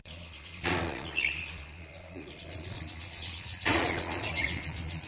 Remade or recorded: remade